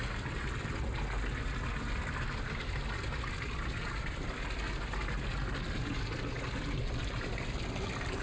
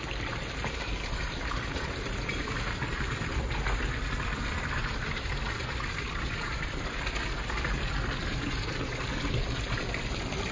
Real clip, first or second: first